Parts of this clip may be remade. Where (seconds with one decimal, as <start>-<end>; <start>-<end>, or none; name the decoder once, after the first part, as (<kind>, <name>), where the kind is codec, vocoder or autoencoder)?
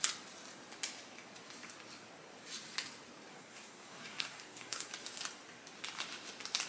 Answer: 3.3-4.9 (codec, SNAC)